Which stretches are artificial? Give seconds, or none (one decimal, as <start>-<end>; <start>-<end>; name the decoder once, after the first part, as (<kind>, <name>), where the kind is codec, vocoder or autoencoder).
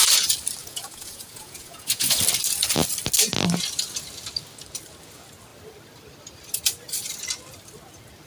0.6-2.2 (vocoder, Vocos)